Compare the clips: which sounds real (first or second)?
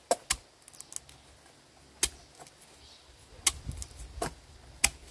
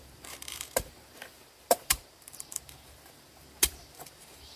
first